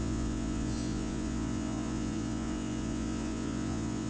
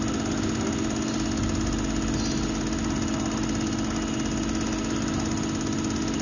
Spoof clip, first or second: first